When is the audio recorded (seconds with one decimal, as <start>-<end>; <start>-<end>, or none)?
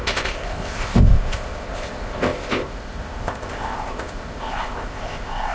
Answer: none